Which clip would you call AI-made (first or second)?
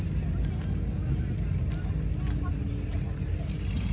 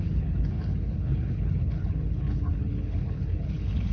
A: second